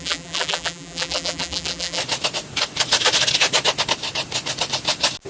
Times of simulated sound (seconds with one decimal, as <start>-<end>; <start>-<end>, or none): 0.0-2.0